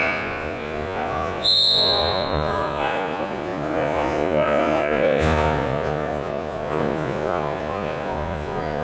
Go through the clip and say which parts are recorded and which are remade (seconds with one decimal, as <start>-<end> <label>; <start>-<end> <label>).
0.0-8.8 remade